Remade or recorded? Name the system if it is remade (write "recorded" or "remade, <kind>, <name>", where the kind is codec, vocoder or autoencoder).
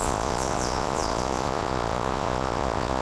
remade, vocoder, Vocos